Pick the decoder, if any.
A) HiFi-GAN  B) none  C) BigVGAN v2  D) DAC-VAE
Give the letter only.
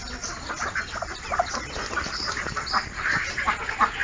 B